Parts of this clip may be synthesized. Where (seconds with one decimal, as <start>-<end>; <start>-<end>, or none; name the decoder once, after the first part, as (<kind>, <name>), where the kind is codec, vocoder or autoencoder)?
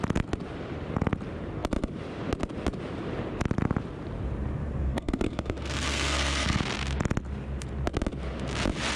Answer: 4.8-6.6 (codec, SNAC)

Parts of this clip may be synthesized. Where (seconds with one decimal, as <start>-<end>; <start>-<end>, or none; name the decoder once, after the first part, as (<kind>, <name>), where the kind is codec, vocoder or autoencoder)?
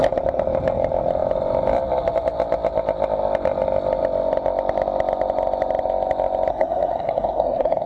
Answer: 6.5-7.9 (codec, SNAC)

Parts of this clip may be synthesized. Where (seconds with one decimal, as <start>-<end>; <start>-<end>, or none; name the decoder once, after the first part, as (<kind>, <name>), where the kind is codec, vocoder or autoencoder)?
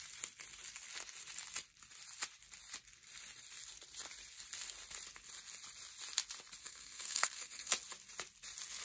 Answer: 6.6-7.7 (codec, SNAC)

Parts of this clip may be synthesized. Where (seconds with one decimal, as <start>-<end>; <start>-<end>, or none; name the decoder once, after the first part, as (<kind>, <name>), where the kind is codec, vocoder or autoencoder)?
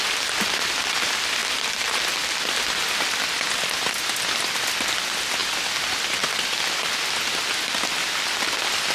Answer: none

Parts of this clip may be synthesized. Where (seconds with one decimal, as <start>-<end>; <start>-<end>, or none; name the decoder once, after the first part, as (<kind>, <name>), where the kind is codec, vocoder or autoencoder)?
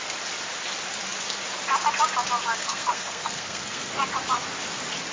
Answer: 2.6-3.9 (codec, SNAC)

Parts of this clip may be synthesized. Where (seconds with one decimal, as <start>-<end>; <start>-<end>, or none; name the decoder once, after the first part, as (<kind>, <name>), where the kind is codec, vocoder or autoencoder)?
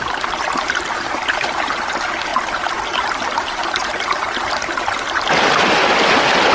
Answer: none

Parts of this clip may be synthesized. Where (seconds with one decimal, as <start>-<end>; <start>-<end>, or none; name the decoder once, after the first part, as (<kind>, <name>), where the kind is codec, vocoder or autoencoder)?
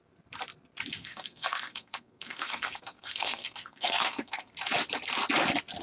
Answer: 1.0-4.5 (codec, SNAC)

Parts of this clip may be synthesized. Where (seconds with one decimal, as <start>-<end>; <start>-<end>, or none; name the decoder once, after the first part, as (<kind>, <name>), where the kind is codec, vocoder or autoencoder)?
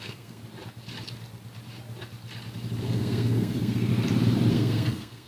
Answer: 0.0-0.4 (codec, SNAC); 2.8-3.9; 4.5-5.3